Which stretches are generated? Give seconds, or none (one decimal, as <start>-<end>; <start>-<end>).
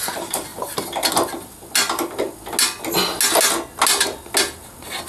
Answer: none